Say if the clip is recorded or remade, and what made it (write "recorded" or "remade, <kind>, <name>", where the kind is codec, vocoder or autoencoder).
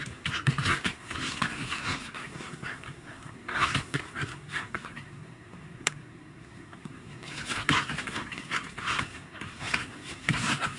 remade, codec, SNAC